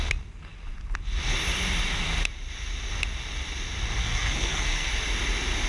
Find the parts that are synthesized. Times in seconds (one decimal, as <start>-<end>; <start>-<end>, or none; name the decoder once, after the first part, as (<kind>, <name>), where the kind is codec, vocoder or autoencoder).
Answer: 4.0-4.9 (codec, SNAC)